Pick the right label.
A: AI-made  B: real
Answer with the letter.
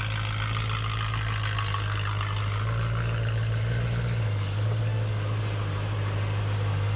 B